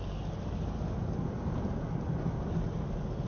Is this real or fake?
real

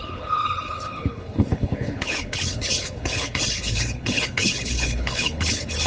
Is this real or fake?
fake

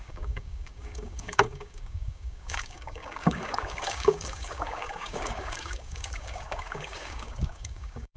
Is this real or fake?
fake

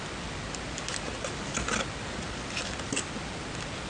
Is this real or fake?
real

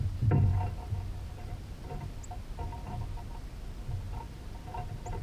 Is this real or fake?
real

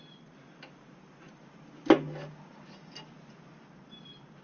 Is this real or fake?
real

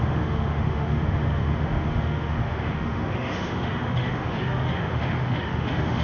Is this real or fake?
fake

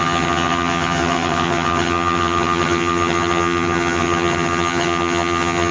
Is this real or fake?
fake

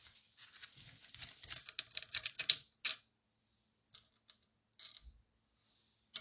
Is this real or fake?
real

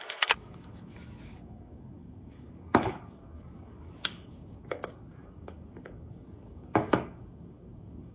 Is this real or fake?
fake